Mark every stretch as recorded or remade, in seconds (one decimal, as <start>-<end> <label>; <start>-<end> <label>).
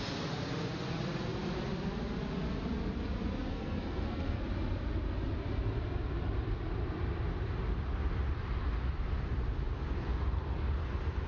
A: 0.0-3.5 recorded; 3.5-4.4 remade; 4.4-11.3 recorded